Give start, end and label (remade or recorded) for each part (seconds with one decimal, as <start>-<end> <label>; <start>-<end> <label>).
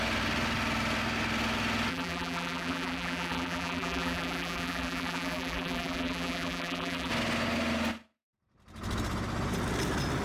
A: 0.0-1.9 recorded; 1.9-7.1 remade; 7.1-10.2 recorded